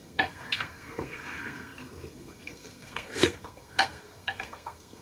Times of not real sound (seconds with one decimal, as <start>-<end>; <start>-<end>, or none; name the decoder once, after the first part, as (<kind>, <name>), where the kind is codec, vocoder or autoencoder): 0.0-5.0 (codec, SNAC)